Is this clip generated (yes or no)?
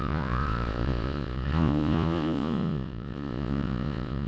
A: yes